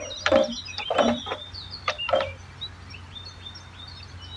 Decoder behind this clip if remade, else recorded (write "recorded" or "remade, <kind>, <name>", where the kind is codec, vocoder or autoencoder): recorded